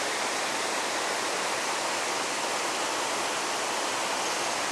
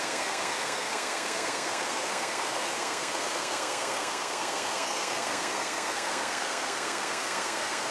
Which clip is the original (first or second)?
first